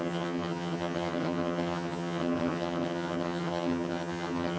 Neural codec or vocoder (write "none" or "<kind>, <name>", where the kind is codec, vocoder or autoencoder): vocoder, HiFi-GAN